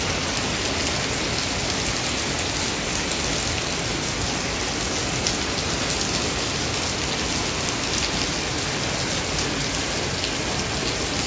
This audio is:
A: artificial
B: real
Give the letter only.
B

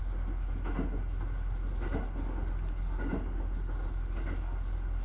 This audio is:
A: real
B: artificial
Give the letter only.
A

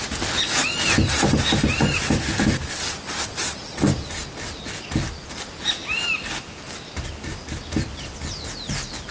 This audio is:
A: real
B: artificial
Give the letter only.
A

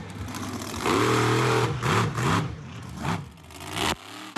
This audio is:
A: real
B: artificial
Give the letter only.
A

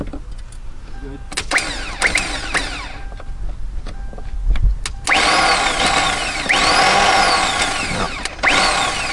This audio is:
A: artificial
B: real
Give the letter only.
B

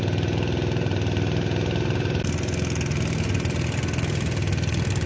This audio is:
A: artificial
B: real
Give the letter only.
B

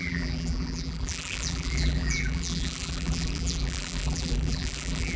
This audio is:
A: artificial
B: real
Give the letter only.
A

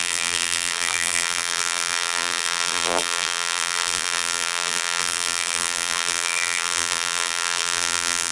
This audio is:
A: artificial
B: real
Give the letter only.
A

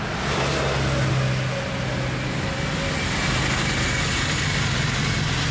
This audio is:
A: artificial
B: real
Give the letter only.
B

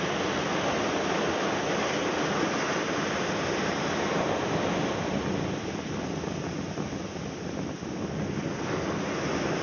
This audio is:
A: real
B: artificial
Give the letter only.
A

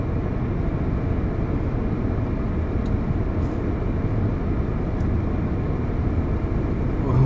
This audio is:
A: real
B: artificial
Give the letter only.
A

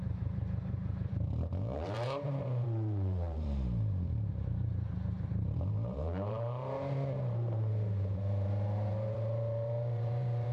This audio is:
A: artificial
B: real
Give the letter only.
A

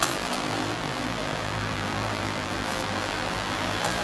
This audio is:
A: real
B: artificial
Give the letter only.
B